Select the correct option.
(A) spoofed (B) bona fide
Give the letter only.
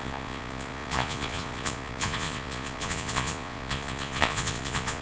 A